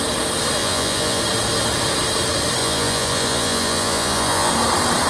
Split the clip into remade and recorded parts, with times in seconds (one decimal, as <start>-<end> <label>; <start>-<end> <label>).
0.0-0.6 recorded; 0.6-1.2 remade; 1.2-2.6 recorded; 2.6-4.5 remade; 4.5-5.1 recorded